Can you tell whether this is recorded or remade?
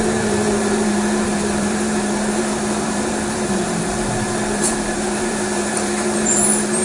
remade